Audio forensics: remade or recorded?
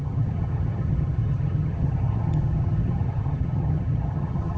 remade